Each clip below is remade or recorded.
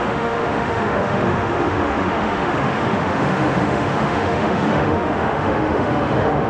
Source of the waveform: remade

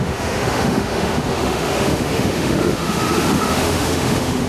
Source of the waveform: remade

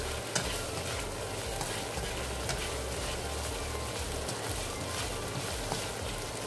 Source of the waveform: recorded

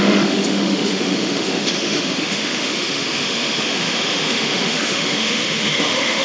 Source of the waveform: remade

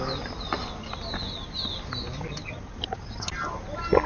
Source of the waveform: recorded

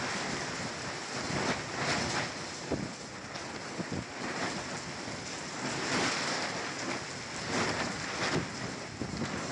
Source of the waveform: recorded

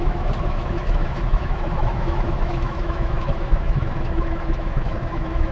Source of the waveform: remade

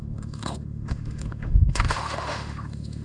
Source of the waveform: remade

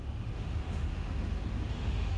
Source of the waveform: remade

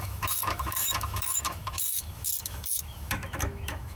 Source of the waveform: remade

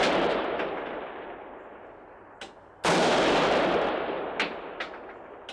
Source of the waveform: recorded